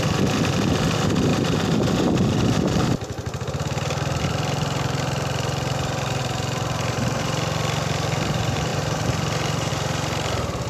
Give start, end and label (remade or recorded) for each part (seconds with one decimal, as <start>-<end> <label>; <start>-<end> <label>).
0.0-10.7 remade